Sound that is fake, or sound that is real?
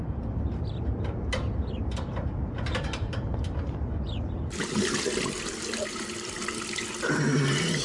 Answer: real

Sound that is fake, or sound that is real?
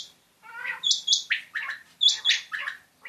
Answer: real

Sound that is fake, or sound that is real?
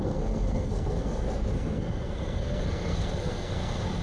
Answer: fake